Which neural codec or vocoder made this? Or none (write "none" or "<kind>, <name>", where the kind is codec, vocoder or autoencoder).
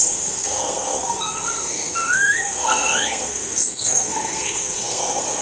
codec, SNAC